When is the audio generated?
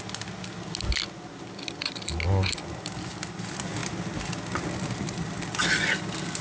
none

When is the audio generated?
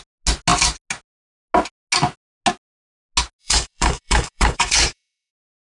3.4-5.3 (codec, DAC)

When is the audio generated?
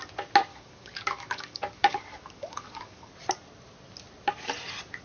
0.5-3.1 (codec, DAC)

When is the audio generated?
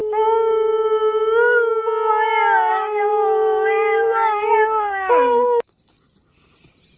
0.0-1.7 (codec, DAC); 2.7-5.7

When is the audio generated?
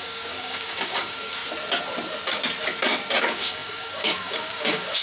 0.0-1.4 (codec, DAC); 3.2-5.0